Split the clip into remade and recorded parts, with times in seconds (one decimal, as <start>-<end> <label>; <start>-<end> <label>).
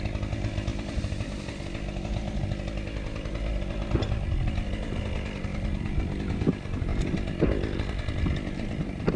0.0-0.7 recorded; 0.7-1.4 remade; 1.4-5.5 recorded; 5.5-6.1 remade; 6.1-6.9 recorded; 6.9-8.0 remade; 8.0-9.2 recorded